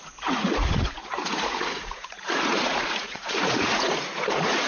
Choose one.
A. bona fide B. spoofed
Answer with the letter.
B